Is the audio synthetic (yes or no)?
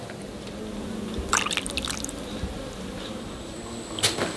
no